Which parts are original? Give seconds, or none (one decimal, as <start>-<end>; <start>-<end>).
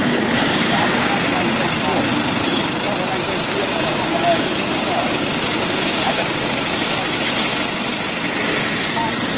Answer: 1.1-3.4; 7.2-9.4